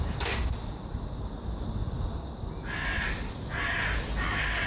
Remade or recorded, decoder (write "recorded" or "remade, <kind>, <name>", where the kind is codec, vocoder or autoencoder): recorded